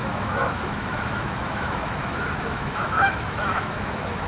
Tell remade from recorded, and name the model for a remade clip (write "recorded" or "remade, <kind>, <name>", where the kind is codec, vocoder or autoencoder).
remade, autoencoder, DAC-VAE